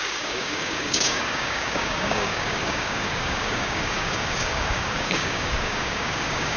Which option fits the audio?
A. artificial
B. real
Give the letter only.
A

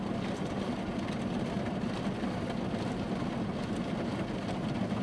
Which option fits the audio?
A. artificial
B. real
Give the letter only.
B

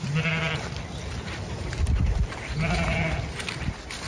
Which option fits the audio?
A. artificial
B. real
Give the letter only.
B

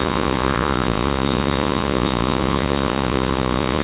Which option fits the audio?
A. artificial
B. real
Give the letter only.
A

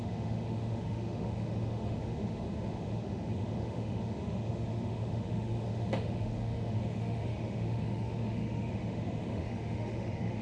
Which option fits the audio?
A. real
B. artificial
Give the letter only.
B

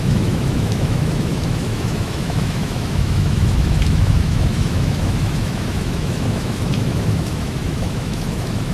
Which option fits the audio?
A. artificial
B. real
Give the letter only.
A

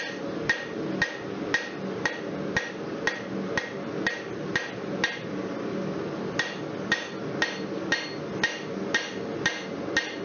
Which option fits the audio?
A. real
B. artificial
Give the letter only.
A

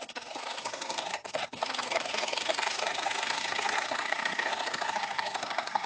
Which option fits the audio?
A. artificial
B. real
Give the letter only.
A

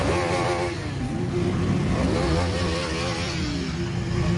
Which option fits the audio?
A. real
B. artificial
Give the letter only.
A